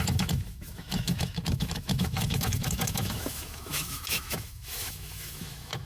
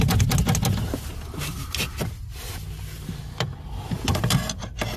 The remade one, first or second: first